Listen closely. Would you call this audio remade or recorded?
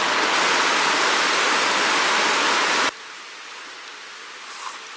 recorded